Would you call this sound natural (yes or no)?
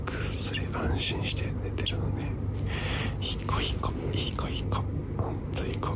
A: yes